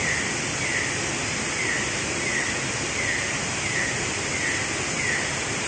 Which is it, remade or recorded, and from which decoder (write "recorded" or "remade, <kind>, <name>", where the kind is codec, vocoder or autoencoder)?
recorded